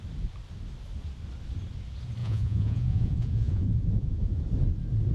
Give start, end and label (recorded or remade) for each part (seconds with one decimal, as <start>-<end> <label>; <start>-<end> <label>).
0.0-2.2 recorded; 2.2-4.4 remade; 4.4-5.1 recorded